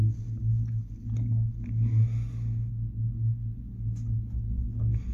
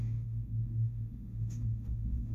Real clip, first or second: first